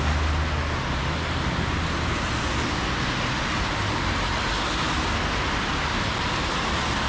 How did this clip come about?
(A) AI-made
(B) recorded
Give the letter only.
B